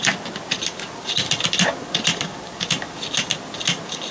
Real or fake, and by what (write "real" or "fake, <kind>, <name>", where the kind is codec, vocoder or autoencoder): real